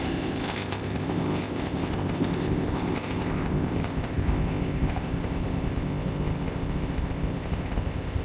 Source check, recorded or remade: remade